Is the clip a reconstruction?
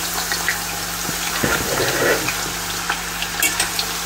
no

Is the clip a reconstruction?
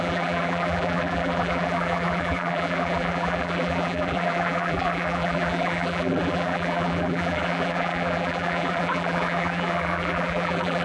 yes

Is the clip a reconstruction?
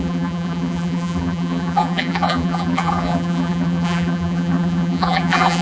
yes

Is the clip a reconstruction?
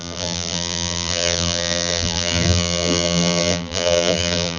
yes